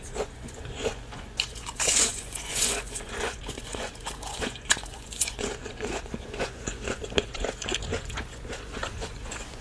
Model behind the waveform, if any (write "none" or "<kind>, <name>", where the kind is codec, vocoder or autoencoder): vocoder, Vocos